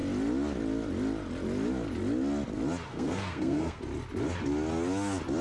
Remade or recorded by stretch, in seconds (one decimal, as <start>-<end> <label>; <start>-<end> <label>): 0.0-2.9 recorded; 2.9-3.8 remade; 3.8-5.4 recorded